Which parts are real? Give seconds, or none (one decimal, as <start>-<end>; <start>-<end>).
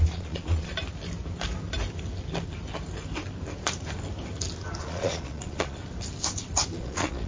0.7-4.8; 5.8-6.8